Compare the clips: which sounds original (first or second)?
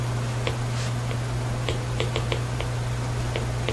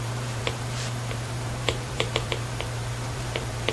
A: first